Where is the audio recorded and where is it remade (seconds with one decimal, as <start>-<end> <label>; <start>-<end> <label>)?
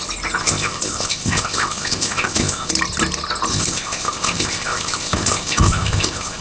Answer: 0.0-0.4 recorded; 0.4-2.7 remade; 2.7-3.5 recorded; 3.5-6.4 remade